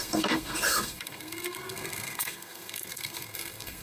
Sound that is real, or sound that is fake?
fake